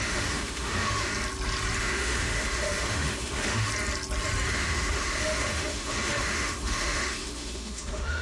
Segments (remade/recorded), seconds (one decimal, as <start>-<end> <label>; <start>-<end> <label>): 0.0-1.1 remade; 1.1-1.8 recorded; 1.8-3.7 remade; 3.7-4.5 recorded; 4.5-8.2 remade